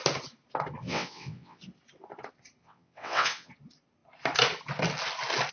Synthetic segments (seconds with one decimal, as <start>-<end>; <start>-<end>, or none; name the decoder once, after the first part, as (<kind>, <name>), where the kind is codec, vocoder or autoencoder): 0.8-1.6 (vocoder, WaveNeXt); 2.6-3.5